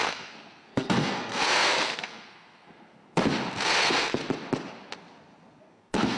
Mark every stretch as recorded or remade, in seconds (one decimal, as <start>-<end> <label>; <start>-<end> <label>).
0.0-3.0 remade; 3.0-3.8 recorded; 3.8-4.2 remade; 4.2-5.6 recorded; 5.6-6.2 remade